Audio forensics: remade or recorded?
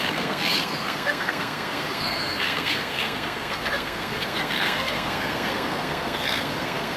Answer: remade